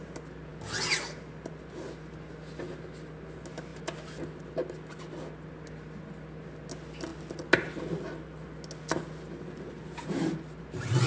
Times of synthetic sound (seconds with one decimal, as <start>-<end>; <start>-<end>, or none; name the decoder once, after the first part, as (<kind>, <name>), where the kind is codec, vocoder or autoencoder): none